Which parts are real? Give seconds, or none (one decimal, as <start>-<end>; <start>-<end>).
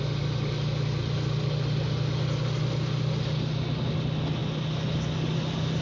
0.0-5.8